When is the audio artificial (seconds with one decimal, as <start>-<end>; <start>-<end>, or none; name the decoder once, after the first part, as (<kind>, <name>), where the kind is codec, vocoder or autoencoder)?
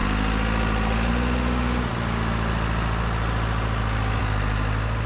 none